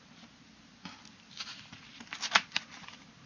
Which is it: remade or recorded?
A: recorded